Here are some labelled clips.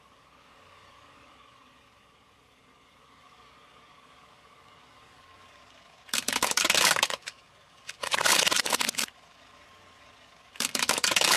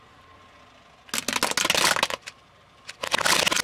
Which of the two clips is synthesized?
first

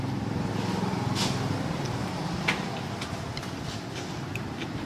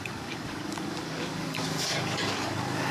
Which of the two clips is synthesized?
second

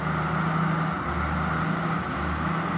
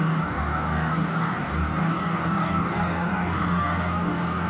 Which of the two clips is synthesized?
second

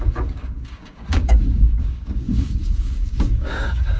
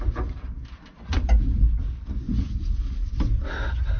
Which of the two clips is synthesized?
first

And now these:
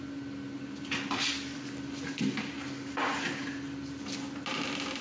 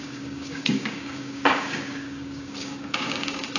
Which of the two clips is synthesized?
second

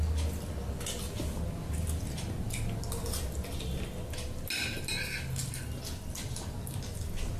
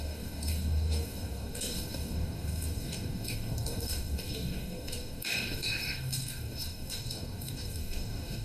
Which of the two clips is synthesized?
second